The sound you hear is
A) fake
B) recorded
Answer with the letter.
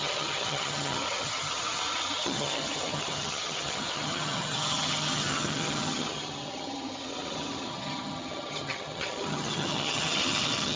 A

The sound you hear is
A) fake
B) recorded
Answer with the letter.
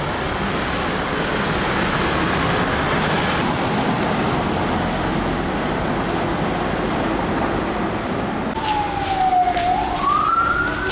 B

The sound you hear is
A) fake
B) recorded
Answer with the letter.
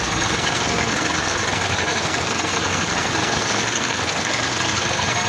A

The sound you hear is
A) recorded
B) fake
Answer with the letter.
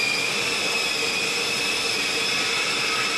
A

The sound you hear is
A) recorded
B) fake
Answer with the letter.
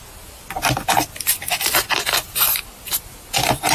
A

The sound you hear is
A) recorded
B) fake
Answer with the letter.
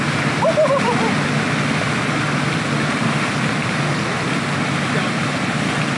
A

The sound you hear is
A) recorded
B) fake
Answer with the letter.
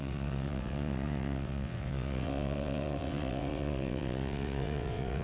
B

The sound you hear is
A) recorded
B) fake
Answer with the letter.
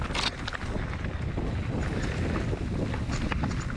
A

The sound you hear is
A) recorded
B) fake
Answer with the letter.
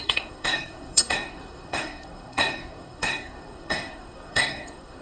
B